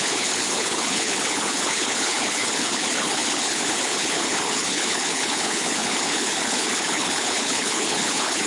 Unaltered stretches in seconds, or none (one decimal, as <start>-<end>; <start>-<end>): none